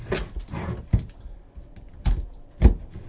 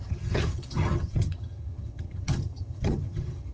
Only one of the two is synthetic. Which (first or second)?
second